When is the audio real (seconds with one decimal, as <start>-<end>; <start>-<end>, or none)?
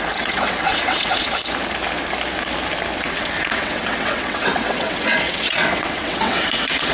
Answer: 1.4-3.0